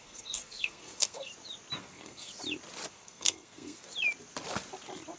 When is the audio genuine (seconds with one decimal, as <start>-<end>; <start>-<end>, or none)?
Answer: 1.3-1.8; 2.3-2.9; 3.9-5.2